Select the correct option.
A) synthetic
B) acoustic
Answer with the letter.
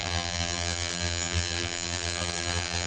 A